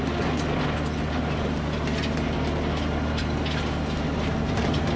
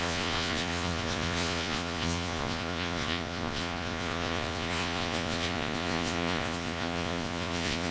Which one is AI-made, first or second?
second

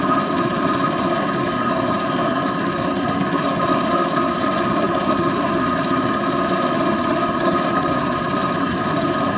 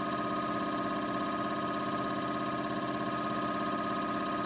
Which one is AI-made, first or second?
first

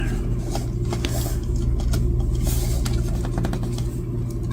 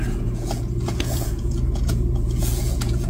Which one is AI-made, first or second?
second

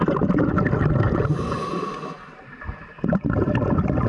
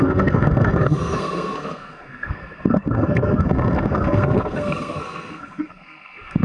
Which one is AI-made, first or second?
second